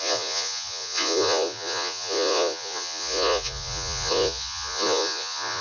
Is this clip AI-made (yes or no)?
yes